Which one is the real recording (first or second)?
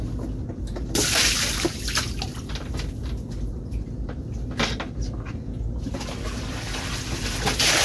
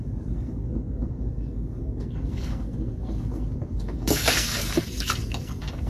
first